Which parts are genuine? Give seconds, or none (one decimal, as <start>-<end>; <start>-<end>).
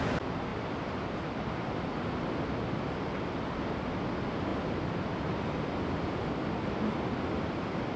0.0-8.0